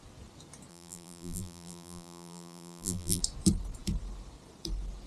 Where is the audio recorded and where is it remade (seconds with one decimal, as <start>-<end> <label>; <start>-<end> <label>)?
0.0-0.7 recorded; 0.7-3.2 remade; 3.2-5.1 recorded